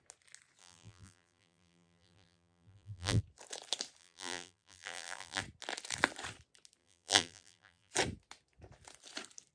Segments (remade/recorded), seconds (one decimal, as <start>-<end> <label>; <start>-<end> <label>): 0.0-0.6 recorded; 0.6-3.2 remade; 3.2-4.0 recorded; 4.0-5.4 remade; 5.4-6.8 recorded; 6.8-7.9 remade; 7.9-9.5 recorded